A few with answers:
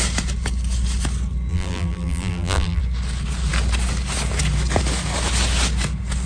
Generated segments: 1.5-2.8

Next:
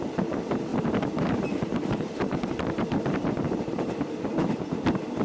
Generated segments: 0.7-3.8

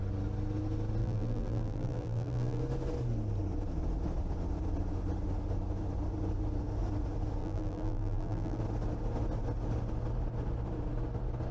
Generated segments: 1.0-2.6; 7.4-8.6

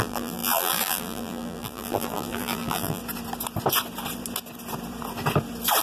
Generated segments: 0.0-3.0

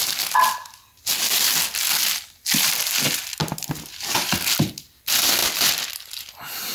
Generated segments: none

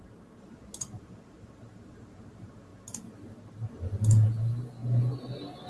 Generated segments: 0.0-2.7; 4.3-4.8

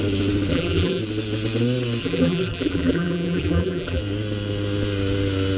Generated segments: 0.5-1.0; 2.0-4.0

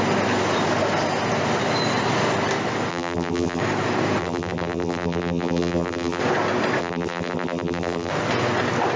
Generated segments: 2.9-3.6; 4.2-6.2; 6.8-8.1